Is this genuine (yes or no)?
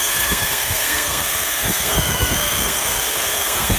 no